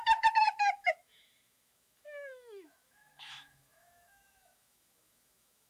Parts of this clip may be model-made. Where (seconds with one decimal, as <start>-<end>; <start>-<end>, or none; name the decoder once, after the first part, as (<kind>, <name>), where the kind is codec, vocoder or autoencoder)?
0.0-5.7 (autoencoder, DAC-VAE)